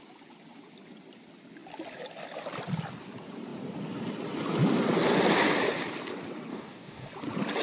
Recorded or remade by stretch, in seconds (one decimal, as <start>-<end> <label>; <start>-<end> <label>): 0.0-6.5 recorded; 6.5-7.1 remade; 7.1-7.6 recorded